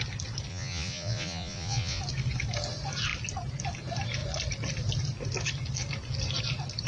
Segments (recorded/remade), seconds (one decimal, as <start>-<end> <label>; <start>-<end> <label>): 0.0-0.5 recorded; 0.5-2.0 remade; 2.0-6.9 recorded